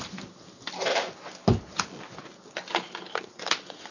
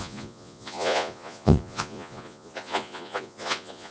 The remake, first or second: second